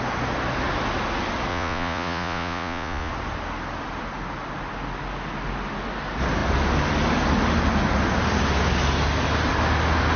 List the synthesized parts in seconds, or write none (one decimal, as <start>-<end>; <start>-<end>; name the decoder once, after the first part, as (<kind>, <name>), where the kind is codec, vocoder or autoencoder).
1.5-3.1 (vocoder, Vocos)